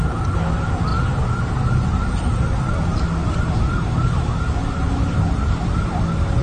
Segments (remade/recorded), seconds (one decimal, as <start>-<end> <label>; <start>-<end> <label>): 0.0-0.9 recorded; 0.9-2.6 remade; 2.6-6.4 recorded